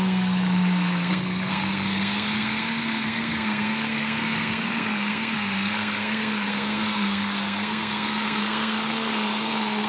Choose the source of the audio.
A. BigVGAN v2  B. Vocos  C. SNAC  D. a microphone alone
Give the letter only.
C